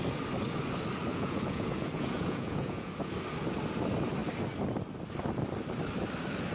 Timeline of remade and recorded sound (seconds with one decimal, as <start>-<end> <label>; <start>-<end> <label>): 0.0-1.1 recorded; 1.1-3.1 remade; 3.1-6.5 recorded